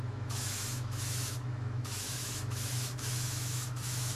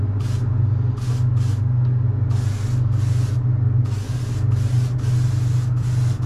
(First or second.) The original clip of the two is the second